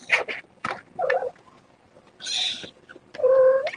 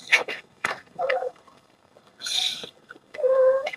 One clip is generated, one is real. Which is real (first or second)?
first